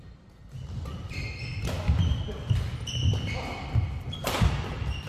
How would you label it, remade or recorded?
recorded